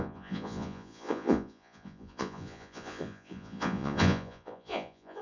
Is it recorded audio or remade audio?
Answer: remade